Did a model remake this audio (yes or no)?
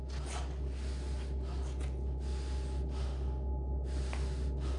no